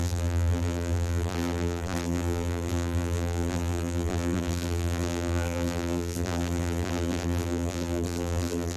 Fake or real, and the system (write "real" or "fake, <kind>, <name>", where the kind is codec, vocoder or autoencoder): fake, vocoder, BigVGAN v2